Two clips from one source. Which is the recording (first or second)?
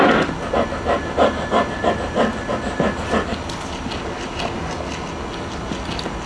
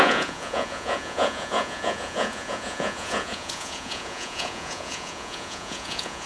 first